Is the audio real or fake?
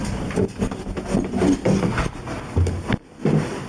real